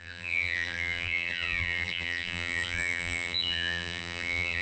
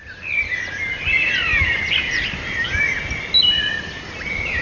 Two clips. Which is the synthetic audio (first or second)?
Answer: first